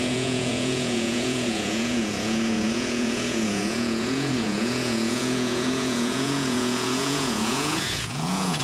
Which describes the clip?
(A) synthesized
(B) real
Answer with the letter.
A